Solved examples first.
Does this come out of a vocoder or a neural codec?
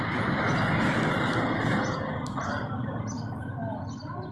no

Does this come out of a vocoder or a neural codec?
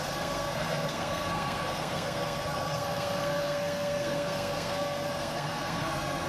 yes